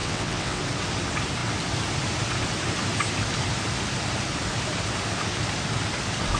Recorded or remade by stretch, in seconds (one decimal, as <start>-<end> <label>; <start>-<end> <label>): 0.0-0.6 remade; 0.6-6.4 recorded